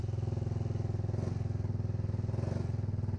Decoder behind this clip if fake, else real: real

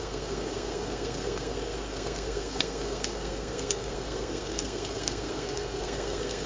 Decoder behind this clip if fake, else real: fake, codec, SNAC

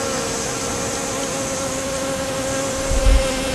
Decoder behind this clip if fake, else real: real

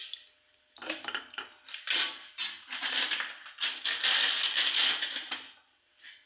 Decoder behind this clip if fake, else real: real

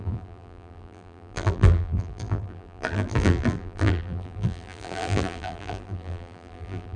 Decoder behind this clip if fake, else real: fake, vocoder, BigVGAN v2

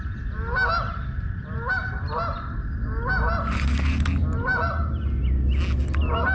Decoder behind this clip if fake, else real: real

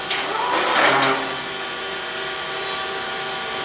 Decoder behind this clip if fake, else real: real